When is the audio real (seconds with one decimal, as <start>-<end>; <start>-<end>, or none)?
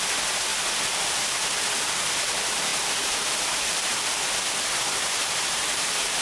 0.0-2.7; 4.0-5.2